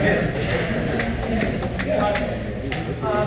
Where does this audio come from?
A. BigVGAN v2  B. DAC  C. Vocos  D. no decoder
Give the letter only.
D